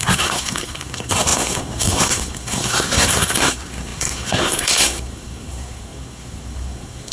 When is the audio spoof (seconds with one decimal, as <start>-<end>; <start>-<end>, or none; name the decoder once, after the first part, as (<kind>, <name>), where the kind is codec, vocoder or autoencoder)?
0.0-7.1 (codec, SNAC)

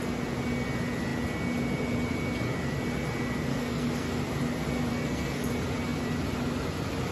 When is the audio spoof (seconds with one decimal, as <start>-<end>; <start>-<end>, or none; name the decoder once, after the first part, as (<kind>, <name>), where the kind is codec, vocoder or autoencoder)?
3.5-4.2 (codec, SNAC); 4.9-5.5

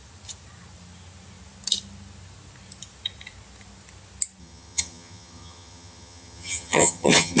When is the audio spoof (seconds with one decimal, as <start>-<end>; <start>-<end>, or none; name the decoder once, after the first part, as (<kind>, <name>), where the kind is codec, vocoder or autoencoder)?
4.4-7.4 (vocoder, HiFi-GAN)

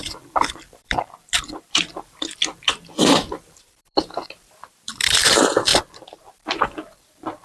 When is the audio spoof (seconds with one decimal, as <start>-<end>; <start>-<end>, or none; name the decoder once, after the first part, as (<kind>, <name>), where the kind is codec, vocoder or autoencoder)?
0.0-7.4 (vocoder, BigVGAN v2)

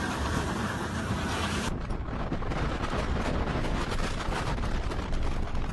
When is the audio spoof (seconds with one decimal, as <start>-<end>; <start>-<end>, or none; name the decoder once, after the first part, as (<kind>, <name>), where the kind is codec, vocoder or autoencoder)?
0.0-2.0 (vocoder, BigVGAN v2)

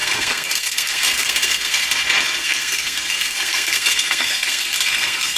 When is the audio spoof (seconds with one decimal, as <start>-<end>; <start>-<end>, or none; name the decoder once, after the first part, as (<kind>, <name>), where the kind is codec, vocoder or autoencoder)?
0.0-1.8 (codec, SNAC); 2.4-5.4